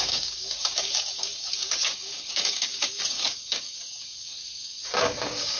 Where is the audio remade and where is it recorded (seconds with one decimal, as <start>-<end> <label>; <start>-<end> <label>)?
0.0-5.6 remade